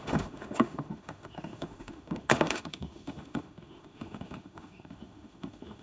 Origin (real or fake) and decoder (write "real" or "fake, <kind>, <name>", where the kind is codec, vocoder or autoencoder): fake, autoencoder, DAC-VAE